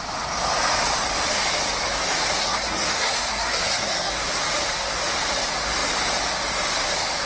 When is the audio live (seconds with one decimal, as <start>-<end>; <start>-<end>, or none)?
0.0-2.4; 4.1-7.3